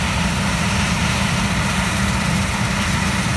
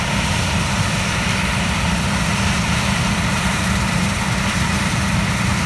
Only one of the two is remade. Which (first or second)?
second